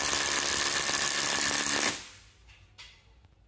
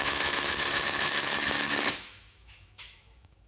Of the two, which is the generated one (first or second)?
second